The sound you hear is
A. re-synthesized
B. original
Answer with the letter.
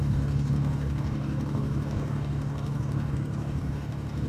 A